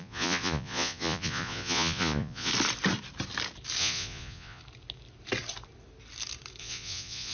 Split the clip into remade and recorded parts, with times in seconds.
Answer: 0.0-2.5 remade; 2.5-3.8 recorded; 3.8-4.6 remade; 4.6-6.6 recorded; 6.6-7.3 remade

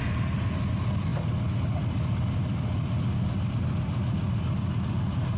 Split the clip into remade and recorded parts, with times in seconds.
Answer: 0.0-5.4 recorded

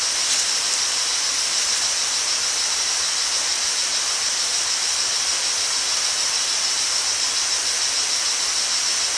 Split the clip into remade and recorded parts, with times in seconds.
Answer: 0.0-9.2 recorded

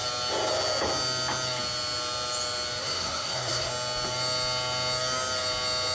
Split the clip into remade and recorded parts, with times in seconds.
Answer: 0.0-2.8 recorded; 2.8-3.7 remade; 3.7-5.9 recorded

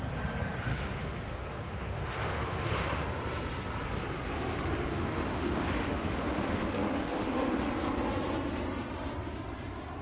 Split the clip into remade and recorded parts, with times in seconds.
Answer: 0.0-0.7 recorded; 0.7-3.1 remade; 3.1-4.9 recorded; 4.9-7.7 remade; 7.7-10.0 recorded